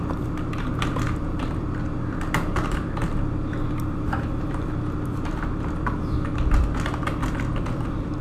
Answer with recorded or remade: remade